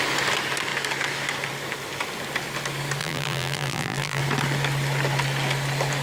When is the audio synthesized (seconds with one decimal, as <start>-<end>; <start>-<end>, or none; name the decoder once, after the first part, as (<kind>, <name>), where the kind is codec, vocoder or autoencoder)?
3.0-4.2 (vocoder, BigVGAN v2)